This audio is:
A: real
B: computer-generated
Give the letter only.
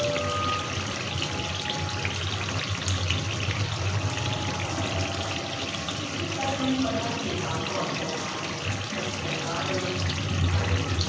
A